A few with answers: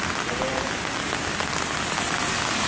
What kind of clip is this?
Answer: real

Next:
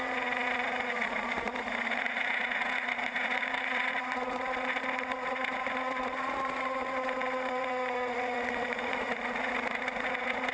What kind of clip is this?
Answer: fake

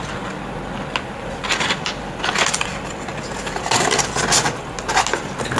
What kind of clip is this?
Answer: real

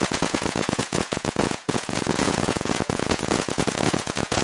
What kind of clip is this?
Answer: fake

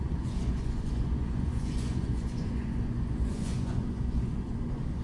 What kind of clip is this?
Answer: fake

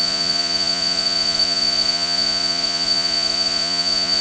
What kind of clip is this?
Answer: fake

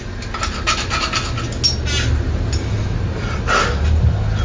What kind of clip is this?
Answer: real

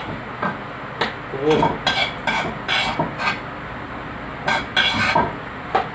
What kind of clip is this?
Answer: real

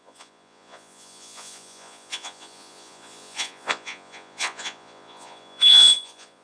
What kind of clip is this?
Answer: fake